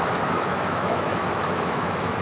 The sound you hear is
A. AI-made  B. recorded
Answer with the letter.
A